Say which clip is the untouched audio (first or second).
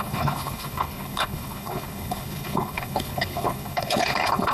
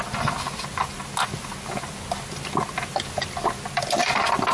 second